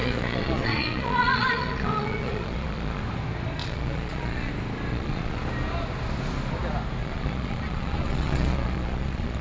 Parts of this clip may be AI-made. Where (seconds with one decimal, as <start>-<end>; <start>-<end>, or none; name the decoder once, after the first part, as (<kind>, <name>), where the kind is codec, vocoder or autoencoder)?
0.0-3.0 (vocoder, Vocos); 3.6-4.5; 4.9-5.4; 7.0-9.4